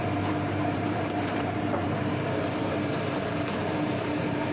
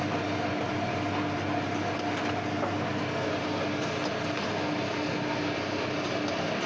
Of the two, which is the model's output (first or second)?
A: first